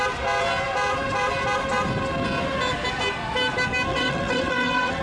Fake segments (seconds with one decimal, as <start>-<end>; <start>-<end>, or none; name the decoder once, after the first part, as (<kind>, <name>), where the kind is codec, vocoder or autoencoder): 3.9-5.0 (vocoder, WaveNeXt)